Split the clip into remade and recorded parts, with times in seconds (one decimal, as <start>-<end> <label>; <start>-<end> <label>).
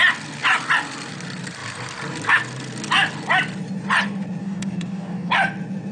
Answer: 0.0-4.4 recorded; 4.4-5.3 remade; 5.3-5.9 recorded